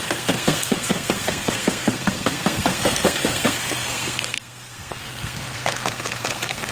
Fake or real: fake